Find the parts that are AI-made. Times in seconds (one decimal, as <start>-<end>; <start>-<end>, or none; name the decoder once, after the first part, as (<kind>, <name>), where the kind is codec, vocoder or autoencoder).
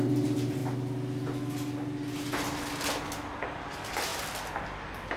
0.0-0.6 (vocoder, BigVGAN v2); 3.3-4.1